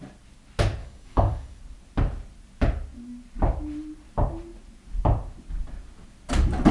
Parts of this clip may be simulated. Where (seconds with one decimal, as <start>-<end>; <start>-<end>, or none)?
0.8-1.6

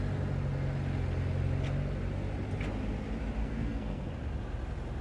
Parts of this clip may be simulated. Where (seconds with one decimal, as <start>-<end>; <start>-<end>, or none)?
3.4-4.1